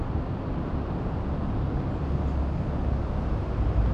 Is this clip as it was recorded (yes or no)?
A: yes